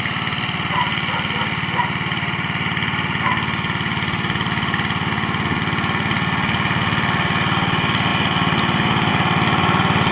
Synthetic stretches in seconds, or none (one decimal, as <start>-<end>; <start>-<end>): none